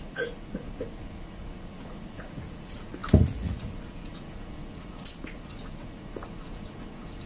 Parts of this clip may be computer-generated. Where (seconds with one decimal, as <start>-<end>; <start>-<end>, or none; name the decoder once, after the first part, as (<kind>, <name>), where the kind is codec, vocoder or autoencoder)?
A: 0.0-7.3 (vocoder, Vocos)